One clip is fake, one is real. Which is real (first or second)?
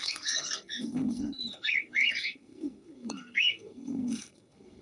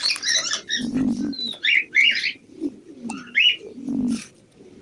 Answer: second